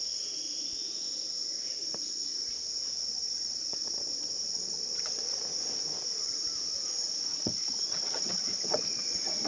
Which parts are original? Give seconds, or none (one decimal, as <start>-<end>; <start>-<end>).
0.0-3.1; 5.4-7.3

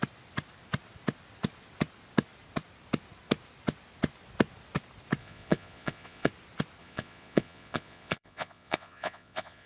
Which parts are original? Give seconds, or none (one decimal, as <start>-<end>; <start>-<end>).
0.0-5.2; 6.3-6.8

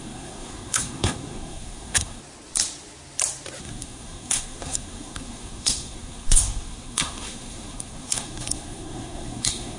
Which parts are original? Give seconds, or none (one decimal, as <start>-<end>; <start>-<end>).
2.2-3.6

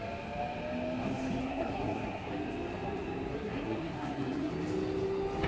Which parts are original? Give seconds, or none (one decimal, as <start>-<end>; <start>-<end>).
0.0-1.4; 2.3-3.3; 4.5-5.5

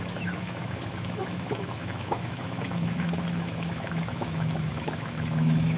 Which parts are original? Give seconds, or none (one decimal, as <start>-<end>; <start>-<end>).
none